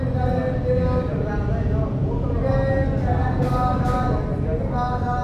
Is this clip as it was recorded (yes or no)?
yes